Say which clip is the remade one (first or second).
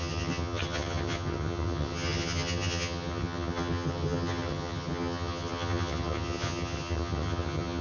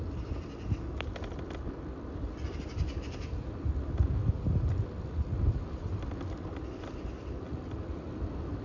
first